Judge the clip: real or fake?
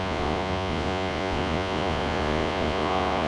fake